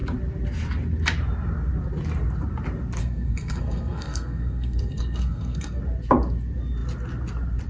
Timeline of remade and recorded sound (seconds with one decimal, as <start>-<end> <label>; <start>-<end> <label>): 0.0-3.0 recorded; 3.0-5.8 remade; 5.8-7.7 recorded